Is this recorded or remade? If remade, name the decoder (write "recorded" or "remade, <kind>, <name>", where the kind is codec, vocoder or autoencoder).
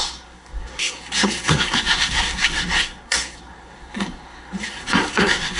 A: remade, codec, SNAC